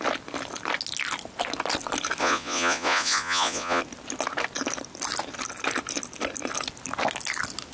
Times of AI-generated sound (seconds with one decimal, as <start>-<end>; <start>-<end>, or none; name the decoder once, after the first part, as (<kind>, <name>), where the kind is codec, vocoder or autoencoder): 2.2-3.8 (vocoder, Vocos)